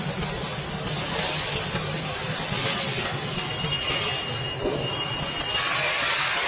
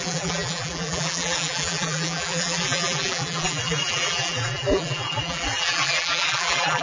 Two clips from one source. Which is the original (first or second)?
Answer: first